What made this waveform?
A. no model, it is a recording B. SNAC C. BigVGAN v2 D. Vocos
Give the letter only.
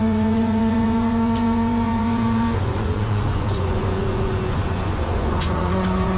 D